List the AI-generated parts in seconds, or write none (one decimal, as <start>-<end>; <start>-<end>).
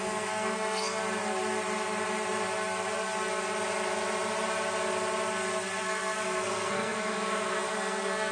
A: 0.0-1.0; 5.8-8.3